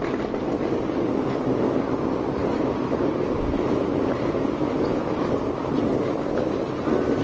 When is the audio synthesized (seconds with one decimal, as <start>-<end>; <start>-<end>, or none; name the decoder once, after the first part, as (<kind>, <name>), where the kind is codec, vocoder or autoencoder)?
2.4-6.7 (vocoder, BigVGAN v2)